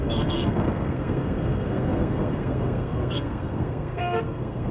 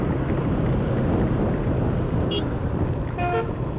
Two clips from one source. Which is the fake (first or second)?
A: first